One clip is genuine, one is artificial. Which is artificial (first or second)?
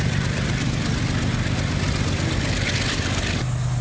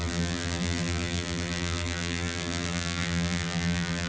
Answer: second